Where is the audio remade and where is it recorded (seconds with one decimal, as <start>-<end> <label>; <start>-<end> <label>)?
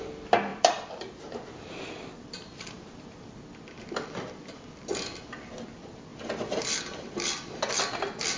0.0-0.5 recorded; 0.5-3.4 remade; 3.4-8.4 recorded